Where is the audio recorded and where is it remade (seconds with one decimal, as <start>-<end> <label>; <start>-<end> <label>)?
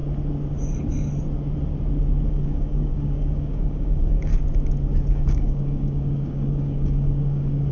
0.0-2.3 recorded; 2.3-4.3 remade; 4.3-5.1 recorded; 5.1-7.7 remade